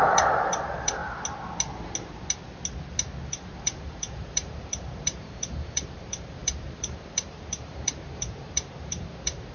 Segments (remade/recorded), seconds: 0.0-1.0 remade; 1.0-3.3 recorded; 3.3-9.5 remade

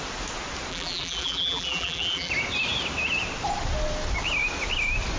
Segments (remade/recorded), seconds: 0.0-0.7 recorded; 0.7-2.3 remade; 2.3-5.2 recorded

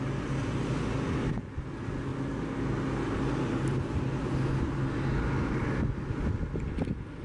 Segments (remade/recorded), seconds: 0.0-7.2 recorded

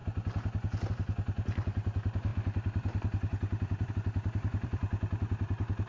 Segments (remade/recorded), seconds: 0.0-0.9 recorded; 0.9-5.9 remade

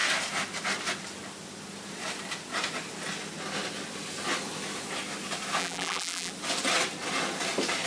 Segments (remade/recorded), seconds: 0.0-5.6 recorded; 5.6-6.3 remade; 6.3-7.9 recorded